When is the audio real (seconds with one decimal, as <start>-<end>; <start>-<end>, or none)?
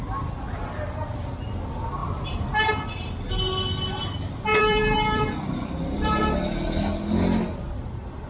0.0-2.0; 2.7-4.5; 6.2-8.3